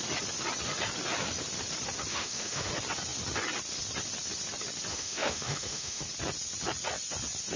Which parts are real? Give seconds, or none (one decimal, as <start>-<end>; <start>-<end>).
0.0-2.1; 2.7-4.9; 6.0-7.6